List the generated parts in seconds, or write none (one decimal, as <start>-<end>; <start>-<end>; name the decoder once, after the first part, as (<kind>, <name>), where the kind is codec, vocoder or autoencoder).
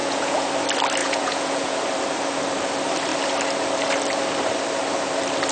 0.0-0.5 (vocoder, Vocos); 1.0-1.8